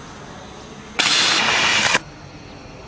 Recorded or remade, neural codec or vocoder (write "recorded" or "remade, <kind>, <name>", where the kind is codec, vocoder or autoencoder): recorded